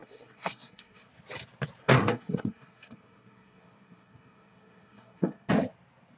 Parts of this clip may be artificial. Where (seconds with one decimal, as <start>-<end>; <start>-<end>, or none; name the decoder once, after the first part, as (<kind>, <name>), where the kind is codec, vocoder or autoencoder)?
0.0-1.1 (codec, SNAC); 1.8-5.5